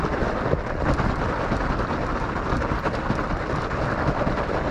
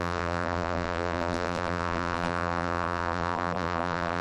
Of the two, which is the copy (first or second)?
second